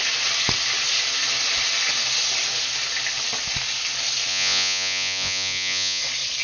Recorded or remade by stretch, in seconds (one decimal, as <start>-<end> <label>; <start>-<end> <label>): 0.0-4.3 recorded; 4.3-6.0 remade; 6.0-6.4 recorded